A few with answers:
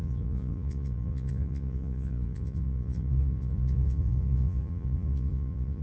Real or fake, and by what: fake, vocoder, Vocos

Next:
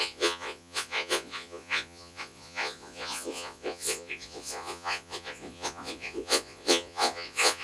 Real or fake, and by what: fake, vocoder, Vocos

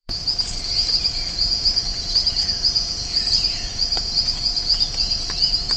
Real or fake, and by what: fake, vocoder, Vocos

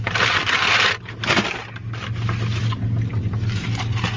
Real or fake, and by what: real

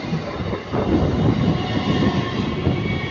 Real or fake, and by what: real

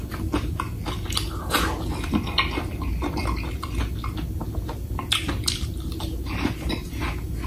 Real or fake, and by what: real